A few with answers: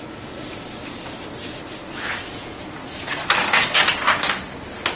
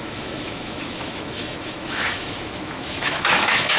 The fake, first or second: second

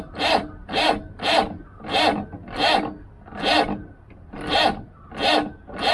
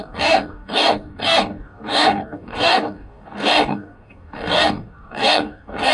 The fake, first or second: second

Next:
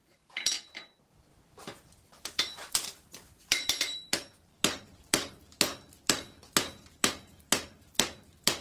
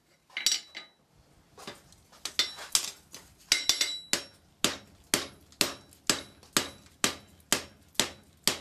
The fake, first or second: first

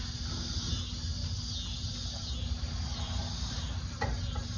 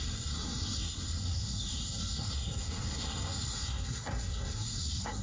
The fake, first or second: second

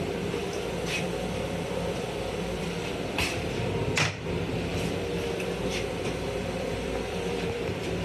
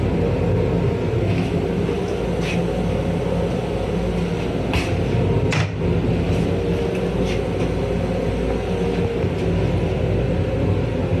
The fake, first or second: first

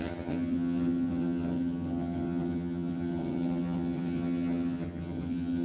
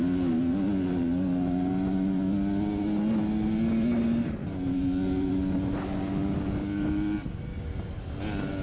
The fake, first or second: first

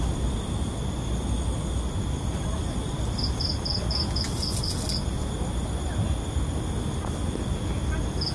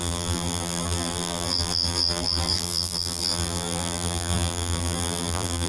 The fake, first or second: second